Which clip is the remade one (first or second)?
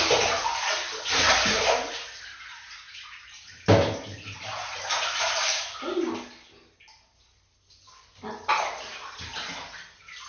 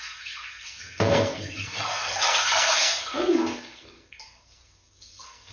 second